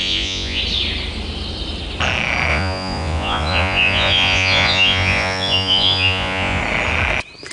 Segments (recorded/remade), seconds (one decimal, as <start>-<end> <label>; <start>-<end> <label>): 0.0-0.6 remade; 0.6-2.5 recorded; 2.5-6.6 remade; 6.6-7.5 recorded